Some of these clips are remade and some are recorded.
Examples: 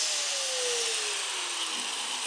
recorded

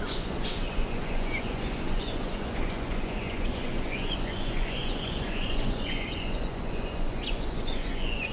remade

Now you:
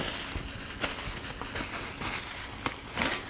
recorded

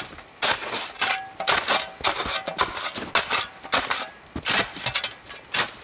recorded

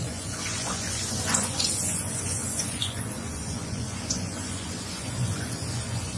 remade